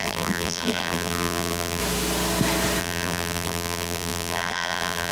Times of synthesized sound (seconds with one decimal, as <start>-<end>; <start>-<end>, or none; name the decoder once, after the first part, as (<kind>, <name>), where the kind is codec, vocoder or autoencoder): 0.0-1.8 (vocoder, BigVGAN v2); 2.8-5.1